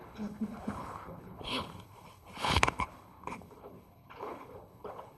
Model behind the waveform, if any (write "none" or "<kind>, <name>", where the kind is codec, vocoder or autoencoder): codec, HILCodec